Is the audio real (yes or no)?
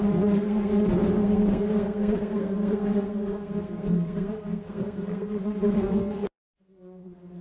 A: no